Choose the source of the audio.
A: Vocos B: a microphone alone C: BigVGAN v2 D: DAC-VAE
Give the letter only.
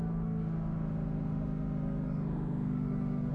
D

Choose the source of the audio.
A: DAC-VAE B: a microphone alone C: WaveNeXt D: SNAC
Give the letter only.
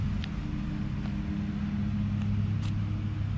B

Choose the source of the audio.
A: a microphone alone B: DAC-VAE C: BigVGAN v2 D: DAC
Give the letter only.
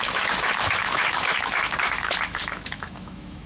B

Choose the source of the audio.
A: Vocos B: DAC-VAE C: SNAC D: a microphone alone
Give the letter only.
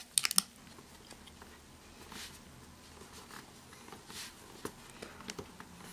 D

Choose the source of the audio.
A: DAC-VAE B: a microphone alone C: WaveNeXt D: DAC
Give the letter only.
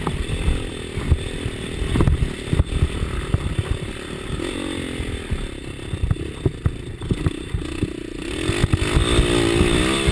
B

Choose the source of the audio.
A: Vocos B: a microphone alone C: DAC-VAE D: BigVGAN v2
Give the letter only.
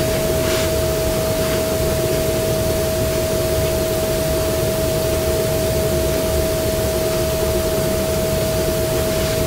B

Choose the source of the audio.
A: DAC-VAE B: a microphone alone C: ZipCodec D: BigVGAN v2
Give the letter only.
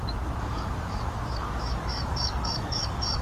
A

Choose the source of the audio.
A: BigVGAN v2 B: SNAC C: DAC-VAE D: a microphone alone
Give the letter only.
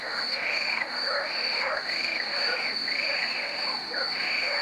C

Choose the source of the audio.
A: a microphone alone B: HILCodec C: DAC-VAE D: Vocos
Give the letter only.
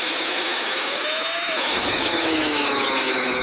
C